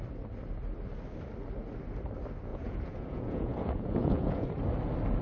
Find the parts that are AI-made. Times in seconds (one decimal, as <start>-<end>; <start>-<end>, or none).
2.5-4.5